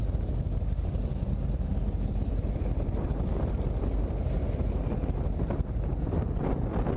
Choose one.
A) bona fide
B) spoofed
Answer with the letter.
B